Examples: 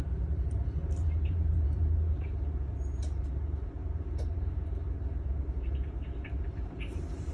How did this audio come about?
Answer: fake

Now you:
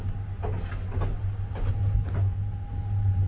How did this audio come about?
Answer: real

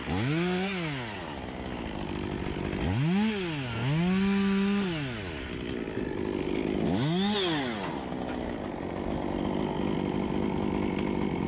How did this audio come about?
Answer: real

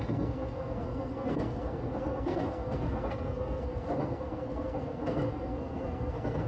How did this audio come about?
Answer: fake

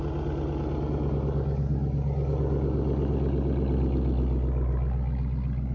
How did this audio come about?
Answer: real